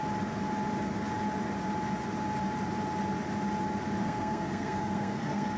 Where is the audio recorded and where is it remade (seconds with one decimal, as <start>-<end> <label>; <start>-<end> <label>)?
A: 0.0-4.0 recorded; 4.0-5.6 remade